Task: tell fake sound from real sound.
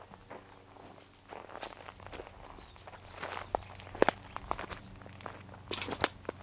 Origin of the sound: real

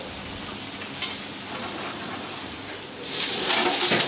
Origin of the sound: real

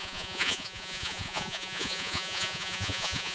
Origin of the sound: fake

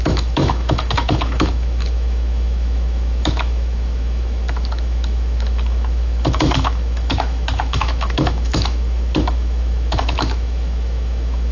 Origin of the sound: fake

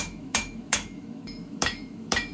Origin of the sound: fake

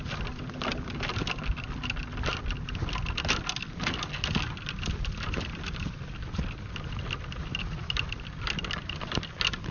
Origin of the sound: real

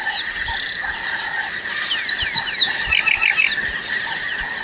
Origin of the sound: real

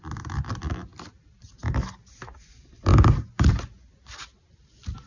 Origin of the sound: real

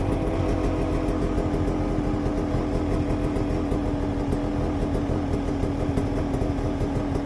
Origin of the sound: real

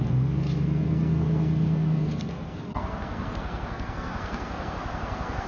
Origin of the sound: fake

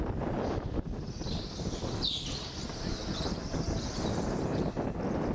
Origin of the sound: real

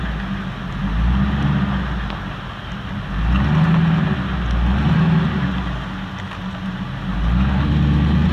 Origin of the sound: real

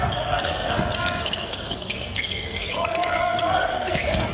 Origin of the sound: fake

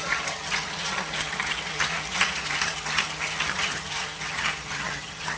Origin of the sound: fake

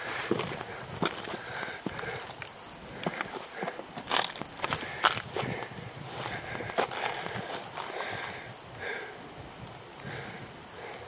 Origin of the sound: fake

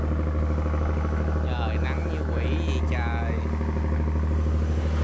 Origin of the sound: real